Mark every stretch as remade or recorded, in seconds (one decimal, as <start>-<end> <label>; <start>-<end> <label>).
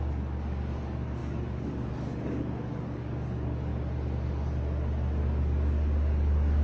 0.0-3.7 remade; 3.7-5.2 recorded; 5.2-6.6 remade